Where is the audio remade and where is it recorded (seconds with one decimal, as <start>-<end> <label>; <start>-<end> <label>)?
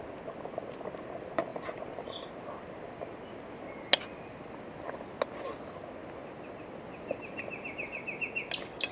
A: 0.0-8.9 recorded